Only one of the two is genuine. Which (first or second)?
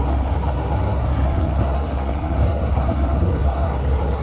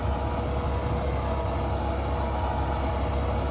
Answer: second